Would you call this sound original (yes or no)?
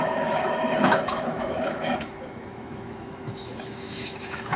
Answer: no